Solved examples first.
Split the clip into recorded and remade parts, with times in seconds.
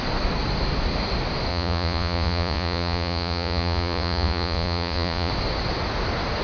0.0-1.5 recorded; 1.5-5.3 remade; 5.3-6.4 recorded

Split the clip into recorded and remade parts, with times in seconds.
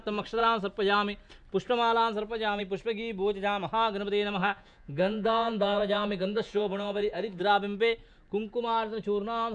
0.0-4.4 recorded; 4.4-7.4 remade; 7.4-9.5 recorded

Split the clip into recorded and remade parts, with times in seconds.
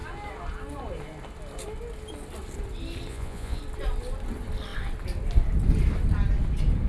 0.0-3.1 recorded; 3.1-3.6 remade; 3.6-6.9 recorded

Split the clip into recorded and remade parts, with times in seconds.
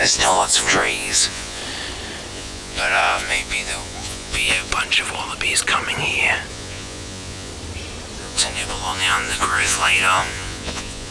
0.0-1.6 remade; 1.6-2.3 recorded; 2.3-4.7 remade; 4.7-6.5 recorded; 6.5-7.5 remade; 7.5-8.2 recorded; 8.2-11.1 remade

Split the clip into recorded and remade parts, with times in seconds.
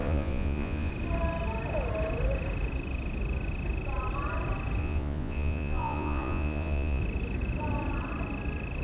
0.0-0.9 remade; 0.9-4.8 recorded; 4.8-7.0 remade; 7.0-8.8 recorded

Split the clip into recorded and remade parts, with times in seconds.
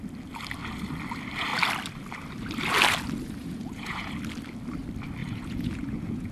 0.0-3.4 recorded; 3.4-4.1 remade; 4.1-5.2 recorded; 5.2-6.3 remade